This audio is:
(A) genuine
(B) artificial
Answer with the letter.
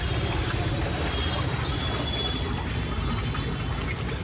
A